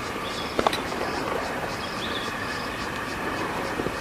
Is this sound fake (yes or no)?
yes